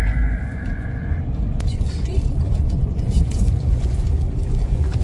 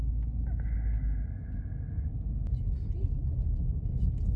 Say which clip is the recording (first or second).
second